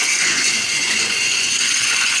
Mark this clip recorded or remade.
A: remade